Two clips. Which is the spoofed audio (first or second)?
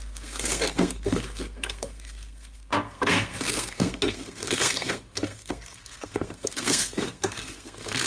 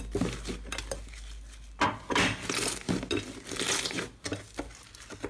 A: first